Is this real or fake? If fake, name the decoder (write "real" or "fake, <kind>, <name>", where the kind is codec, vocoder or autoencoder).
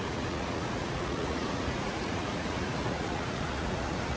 fake, vocoder, Vocos